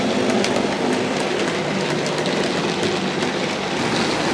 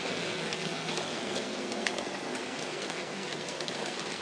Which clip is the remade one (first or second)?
second